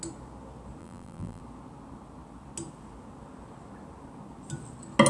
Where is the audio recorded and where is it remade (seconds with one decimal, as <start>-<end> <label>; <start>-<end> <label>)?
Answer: 0.0-0.8 recorded; 0.8-1.4 remade; 1.4-5.1 recorded